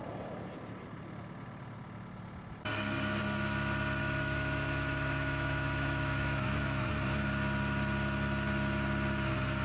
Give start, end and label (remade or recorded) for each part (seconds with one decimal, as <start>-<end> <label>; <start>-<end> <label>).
0.0-4.0 recorded; 4.0-6.9 remade; 6.9-9.6 recorded